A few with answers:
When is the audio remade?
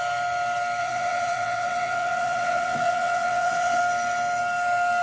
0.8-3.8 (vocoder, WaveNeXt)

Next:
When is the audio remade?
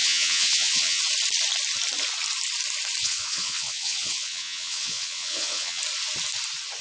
0.0-1.0 (vocoder, WaveNeXt); 3.0-5.8